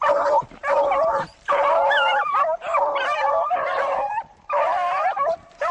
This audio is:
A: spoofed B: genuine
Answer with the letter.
A